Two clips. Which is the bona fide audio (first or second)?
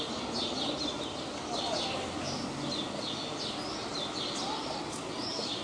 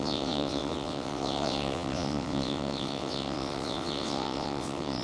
first